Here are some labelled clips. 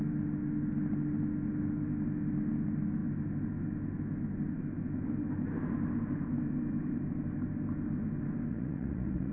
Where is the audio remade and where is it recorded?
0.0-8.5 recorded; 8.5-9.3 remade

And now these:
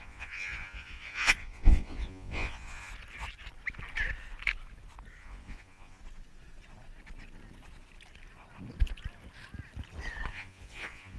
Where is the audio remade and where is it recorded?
0.0-2.9 remade; 2.9-5.2 recorded; 5.2-6.0 remade; 6.0-10.3 recorded; 10.3-11.2 remade

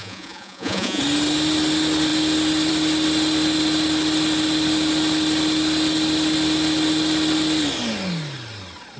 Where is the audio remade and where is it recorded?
0.0-1.0 remade; 1.0-9.0 recorded